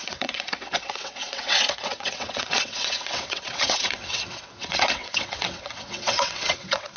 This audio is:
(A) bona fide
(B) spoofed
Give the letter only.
B